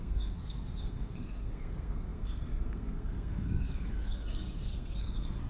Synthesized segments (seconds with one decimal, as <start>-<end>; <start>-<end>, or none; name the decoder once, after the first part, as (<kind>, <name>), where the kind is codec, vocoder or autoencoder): 0.0-5.5 (codec, SNAC)